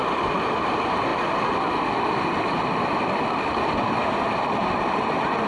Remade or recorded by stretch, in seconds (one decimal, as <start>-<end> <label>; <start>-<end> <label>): 0.0-5.5 recorded